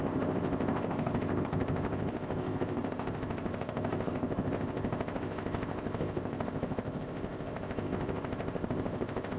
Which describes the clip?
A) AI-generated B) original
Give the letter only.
A